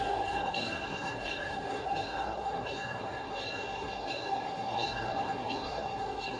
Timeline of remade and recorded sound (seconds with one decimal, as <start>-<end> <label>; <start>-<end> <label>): 0.0-6.4 remade